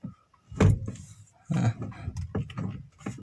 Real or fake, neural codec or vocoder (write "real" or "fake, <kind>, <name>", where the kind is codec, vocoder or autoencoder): real